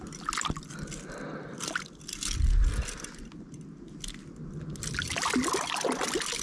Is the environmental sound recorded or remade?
recorded